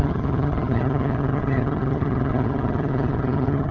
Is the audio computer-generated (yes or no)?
yes